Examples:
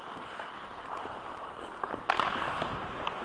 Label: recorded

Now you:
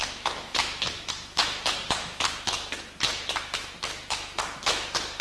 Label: remade